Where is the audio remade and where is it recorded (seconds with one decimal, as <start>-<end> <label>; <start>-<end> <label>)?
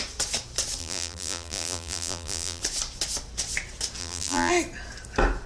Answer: 0.0-0.8 recorded; 0.8-2.6 remade; 2.6-4.0 recorded; 4.0-4.5 remade; 4.5-5.5 recorded